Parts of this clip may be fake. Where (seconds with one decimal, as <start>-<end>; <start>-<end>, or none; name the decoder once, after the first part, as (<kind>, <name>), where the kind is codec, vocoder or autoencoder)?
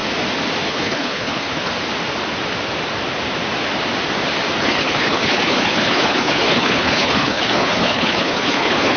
0.7-1.7 (codec, HILCodec); 4.6-9.0